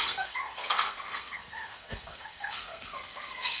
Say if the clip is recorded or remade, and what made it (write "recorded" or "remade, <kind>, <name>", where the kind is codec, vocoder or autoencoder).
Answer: remade, codec, SNAC